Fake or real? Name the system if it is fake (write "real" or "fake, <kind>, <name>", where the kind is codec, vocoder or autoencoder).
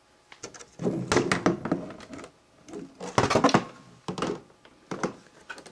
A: real